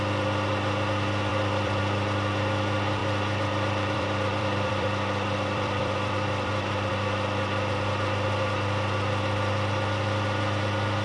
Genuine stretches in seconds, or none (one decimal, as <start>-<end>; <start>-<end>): 0.0-1.3; 1.8-3.0; 6.9-11.0